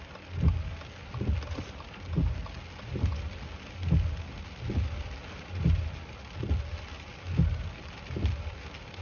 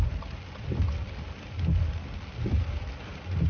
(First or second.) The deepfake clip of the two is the second